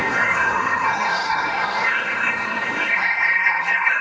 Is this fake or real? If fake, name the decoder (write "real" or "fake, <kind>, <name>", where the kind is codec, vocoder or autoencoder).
fake, codec, SNAC